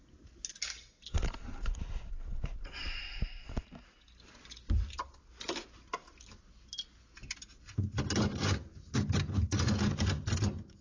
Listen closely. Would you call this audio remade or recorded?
recorded